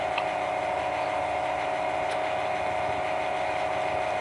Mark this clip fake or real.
real